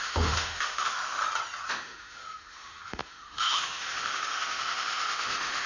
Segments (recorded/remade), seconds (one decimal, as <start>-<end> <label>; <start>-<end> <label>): 0.0-1.2 remade; 1.2-1.7 recorded; 1.7-5.7 remade

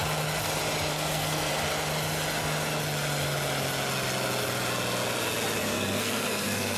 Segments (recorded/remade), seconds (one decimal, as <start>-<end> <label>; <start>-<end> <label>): 0.0-0.9 recorded; 0.9-1.5 remade; 1.5-5.6 recorded; 5.6-6.8 remade

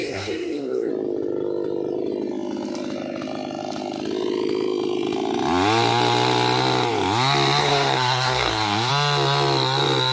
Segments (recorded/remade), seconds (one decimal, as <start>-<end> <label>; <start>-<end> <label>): 0.0-0.9 remade; 0.9-7.6 recorded; 7.6-8.9 remade; 8.9-10.1 recorded

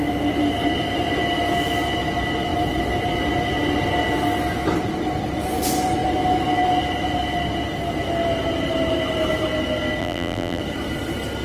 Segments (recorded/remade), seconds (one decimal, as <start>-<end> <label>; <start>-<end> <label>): 0.0-10.0 recorded; 10.0-10.6 remade; 10.6-11.4 recorded

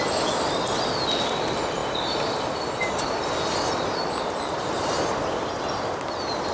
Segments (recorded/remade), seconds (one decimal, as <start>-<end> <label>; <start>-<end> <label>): 0.0-6.5 recorded